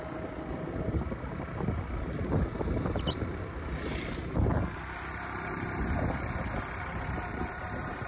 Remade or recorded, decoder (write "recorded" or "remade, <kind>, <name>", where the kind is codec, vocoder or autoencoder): recorded